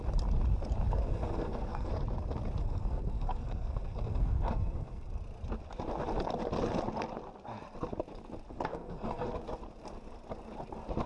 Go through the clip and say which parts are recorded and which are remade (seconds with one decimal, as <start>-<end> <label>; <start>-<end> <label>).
0.0-0.9 recorded; 0.9-1.9 remade; 1.9-2.6 recorded; 2.6-5.2 remade; 5.2-8.7 recorded; 8.7-9.3 remade; 9.3-11.1 recorded